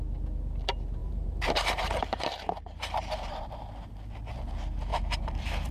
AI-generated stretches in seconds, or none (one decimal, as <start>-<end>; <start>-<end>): 1.0-3.9; 4.9-5.7